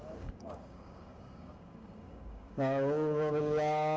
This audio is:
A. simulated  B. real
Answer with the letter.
A